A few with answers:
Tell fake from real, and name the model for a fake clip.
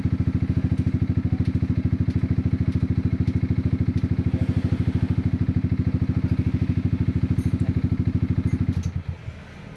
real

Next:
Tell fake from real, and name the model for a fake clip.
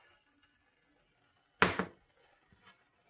real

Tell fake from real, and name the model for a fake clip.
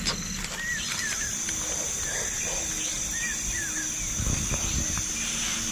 real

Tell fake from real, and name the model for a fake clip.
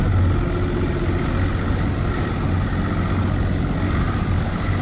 real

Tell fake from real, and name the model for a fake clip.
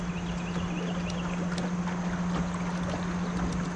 real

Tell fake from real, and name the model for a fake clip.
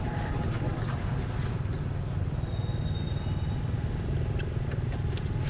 real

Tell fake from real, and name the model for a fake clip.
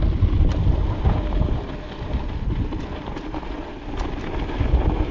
real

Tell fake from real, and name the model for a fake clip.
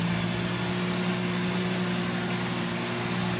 real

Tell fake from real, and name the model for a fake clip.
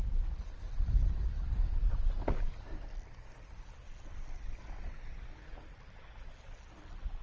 real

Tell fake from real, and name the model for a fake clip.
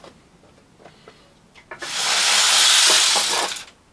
real